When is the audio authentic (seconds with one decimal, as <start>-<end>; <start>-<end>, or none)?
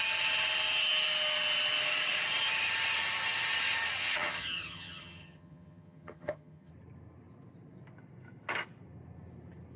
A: 0.0-4.0; 6.7-9.8